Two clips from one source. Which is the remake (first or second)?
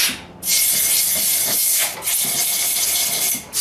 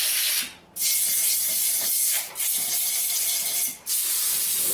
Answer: second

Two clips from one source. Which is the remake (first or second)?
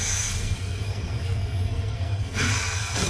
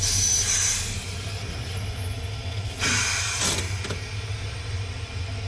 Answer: first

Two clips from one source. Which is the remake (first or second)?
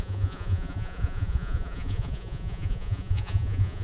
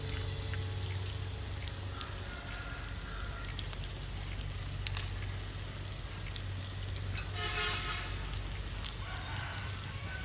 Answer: first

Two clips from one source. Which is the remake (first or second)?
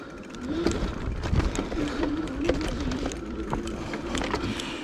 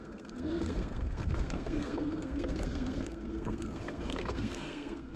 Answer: second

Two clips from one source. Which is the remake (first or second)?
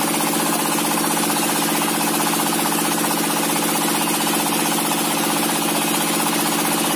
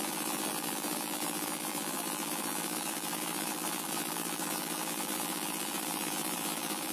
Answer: second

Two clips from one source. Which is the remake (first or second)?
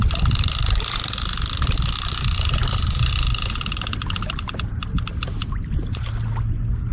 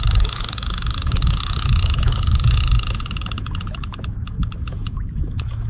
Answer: second